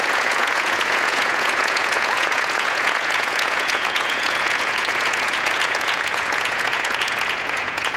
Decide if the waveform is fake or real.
fake